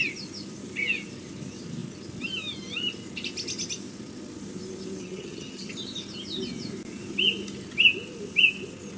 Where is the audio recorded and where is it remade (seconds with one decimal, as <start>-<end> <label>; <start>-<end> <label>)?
0.0-5.0 recorded; 5.0-5.7 remade; 5.7-9.0 recorded